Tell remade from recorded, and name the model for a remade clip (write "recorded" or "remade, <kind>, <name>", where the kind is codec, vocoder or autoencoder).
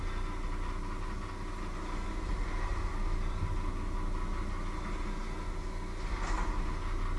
recorded